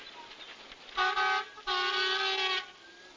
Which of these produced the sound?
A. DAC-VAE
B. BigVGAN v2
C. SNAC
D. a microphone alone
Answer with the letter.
D